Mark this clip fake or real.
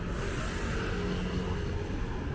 real